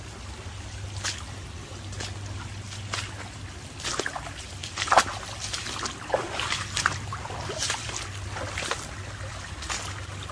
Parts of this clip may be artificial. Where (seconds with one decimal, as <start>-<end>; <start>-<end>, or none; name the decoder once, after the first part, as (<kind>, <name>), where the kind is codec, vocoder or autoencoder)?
none